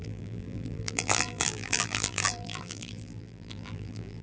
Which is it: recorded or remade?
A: remade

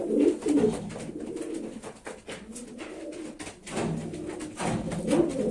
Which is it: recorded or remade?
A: recorded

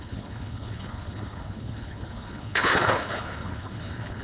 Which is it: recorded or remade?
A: remade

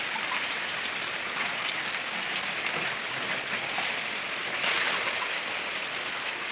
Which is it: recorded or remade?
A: recorded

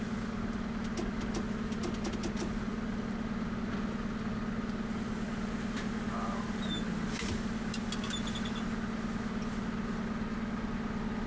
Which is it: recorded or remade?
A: recorded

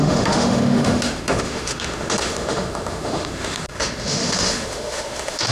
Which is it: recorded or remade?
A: remade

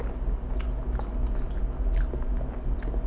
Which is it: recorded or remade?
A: recorded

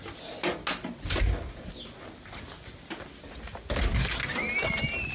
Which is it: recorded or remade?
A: recorded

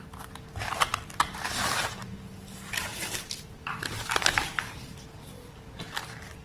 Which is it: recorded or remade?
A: remade